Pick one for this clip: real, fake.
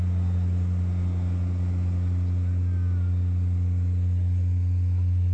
real